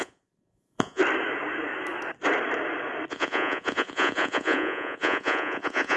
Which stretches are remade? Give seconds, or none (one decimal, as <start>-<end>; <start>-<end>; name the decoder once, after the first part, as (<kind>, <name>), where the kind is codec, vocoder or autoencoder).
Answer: 0.0-1.0 (vocoder, Vocos); 3.1-6.0